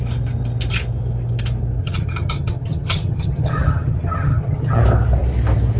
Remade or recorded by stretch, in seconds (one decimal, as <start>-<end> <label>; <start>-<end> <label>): 0.0-1.8 recorded; 1.8-4.8 remade; 4.8-5.8 recorded